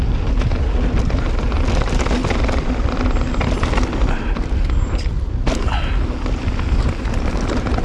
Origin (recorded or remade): recorded